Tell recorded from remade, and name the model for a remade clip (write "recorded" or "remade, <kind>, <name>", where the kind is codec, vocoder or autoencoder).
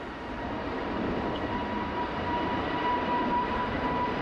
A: remade, vocoder, BigVGAN v2